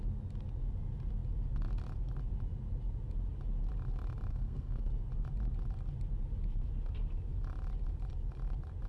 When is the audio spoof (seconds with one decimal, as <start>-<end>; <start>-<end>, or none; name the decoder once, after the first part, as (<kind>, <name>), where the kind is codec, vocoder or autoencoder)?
4.3-4.9 (codec, SNAC)